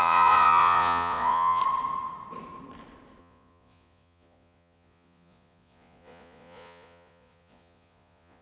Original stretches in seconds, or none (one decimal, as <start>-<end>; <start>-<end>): 1.6-3.2